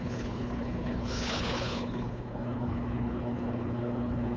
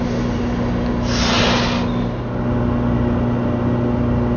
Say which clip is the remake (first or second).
first